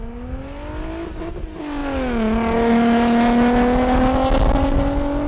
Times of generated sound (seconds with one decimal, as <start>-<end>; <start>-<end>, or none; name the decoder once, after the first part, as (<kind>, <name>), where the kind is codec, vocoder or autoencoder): none